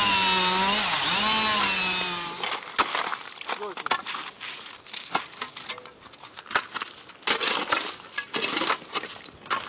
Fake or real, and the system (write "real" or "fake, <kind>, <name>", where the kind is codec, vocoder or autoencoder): real